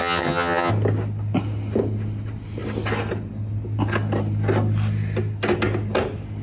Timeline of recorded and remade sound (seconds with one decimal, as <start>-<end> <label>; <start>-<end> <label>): 0.0-0.7 remade; 0.7-6.4 recorded